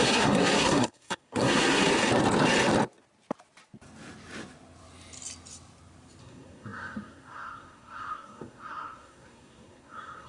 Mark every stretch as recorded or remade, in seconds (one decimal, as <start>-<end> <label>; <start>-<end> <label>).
0.0-1.9 remade; 1.9-6.2 recorded; 6.2-10.3 remade